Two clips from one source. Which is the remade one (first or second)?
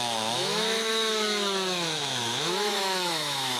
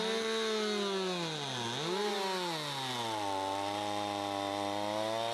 first